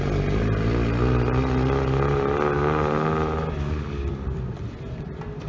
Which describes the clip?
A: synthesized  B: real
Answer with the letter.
B